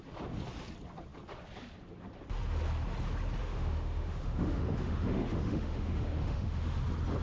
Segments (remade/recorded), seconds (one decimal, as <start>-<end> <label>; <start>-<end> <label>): 0.0-3.4 recorded; 3.4-6.8 remade; 6.8-7.2 recorded